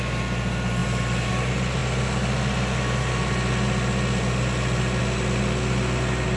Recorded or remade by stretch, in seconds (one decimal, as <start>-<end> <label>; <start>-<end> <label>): 0.0-6.4 recorded